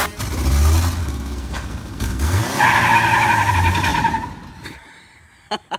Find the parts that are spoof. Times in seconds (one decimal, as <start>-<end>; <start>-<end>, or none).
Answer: 1.0-2.4